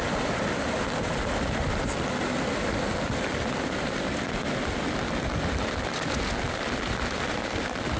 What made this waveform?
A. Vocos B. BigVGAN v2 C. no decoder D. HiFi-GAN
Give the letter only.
C